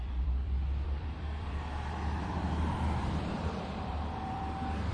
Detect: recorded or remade remade